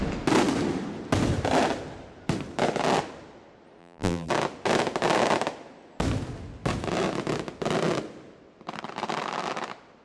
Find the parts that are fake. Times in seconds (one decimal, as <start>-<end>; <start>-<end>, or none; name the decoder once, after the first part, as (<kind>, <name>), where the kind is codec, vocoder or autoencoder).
3.8-4.3 (vocoder, BigVGAN v2)